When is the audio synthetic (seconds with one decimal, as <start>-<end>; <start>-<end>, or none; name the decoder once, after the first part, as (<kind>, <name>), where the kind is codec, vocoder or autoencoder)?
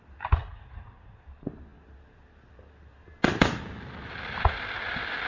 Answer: none